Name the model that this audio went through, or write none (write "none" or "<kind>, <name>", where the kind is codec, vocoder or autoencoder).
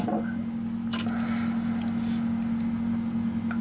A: none